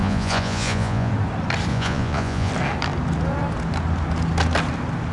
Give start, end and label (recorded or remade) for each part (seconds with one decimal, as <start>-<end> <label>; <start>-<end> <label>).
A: 0.0-1.1 remade; 1.1-1.7 recorded; 1.7-2.5 remade; 2.5-5.1 recorded